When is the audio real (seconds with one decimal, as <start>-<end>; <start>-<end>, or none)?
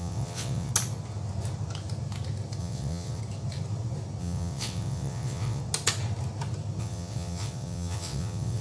0.7-2.6; 3.2-4.2; 5.6-6.8